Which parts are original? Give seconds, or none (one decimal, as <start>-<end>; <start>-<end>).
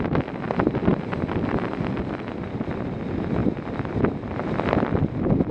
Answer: 0.0-3.4; 5.0-5.5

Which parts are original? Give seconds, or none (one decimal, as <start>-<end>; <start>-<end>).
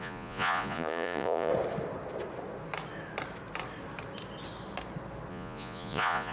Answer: 1.5-5.3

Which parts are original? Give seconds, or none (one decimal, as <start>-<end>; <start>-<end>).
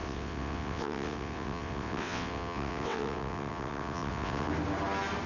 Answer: 4.5-5.3